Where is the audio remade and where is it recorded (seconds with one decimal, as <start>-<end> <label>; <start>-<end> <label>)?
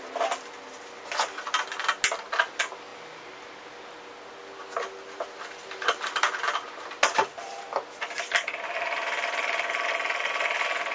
0.0-10.9 recorded